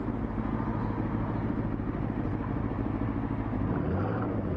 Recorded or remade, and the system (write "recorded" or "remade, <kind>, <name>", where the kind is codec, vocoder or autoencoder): recorded